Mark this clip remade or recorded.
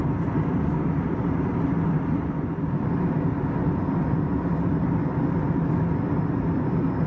recorded